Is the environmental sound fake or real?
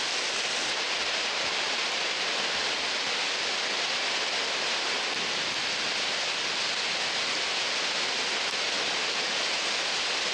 real